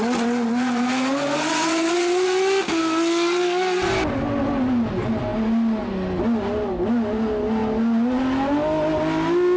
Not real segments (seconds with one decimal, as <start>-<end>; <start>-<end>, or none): none

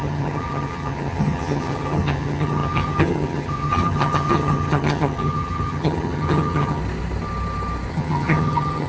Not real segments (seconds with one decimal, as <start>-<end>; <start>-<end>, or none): 0.0-6.8; 7.9-8.9

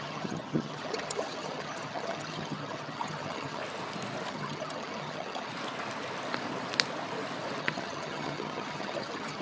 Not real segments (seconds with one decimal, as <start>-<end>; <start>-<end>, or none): 0.0-3.6; 4.3-5.5; 7.6-9.4

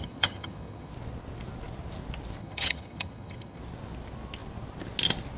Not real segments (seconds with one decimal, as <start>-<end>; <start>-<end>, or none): 0.0-0.9; 2.4-3.6

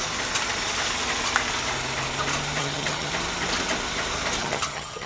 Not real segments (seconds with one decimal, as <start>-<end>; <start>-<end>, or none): 2.6-3.1; 4.4-5.1

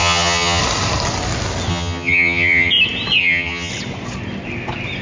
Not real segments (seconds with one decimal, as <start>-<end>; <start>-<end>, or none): 0.0-0.6; 1.7-2.7; 3.2-3.7